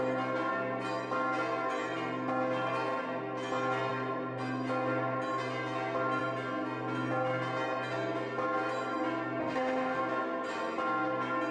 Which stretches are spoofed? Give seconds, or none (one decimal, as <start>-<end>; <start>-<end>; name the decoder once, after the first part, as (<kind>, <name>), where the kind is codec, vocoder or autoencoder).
9.4-10.0 (autoencoder, DAC-VAE)